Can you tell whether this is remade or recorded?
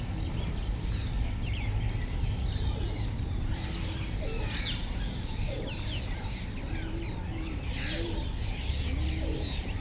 recorded